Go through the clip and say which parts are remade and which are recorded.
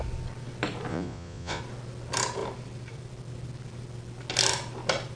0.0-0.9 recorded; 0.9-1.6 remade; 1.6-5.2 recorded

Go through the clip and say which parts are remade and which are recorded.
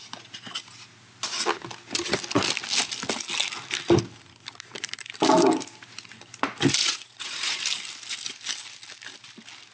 0.0-6.8 recorded; 6.8-7.6 remade; 7.6-9.7 recorded